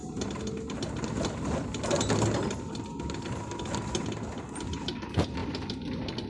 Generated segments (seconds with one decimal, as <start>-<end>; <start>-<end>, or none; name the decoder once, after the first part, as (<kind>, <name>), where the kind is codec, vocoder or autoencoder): none